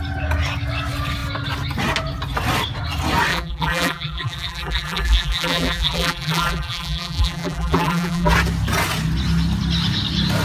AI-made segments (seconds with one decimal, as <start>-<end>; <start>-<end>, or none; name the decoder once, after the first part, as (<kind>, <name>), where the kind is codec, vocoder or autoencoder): 3.3-8.3 (vocoder, BigVGAN v2)